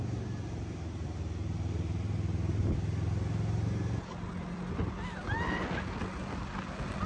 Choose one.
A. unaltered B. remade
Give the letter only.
A